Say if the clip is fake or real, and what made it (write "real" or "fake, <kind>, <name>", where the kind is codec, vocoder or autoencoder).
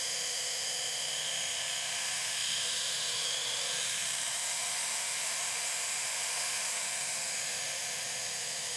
fake, autoencoder, DAC-VAE